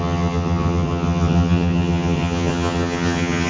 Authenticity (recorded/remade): remade